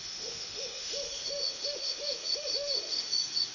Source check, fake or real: fake